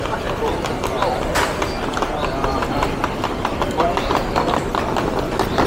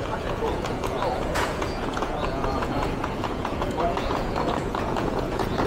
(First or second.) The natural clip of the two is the first